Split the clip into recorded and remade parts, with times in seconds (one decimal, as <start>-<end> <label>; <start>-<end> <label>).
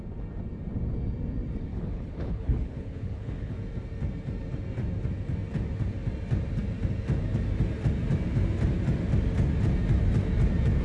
0.0-1.7 recorded; 1.7-3.5 remade; 3.5-10.8 recorded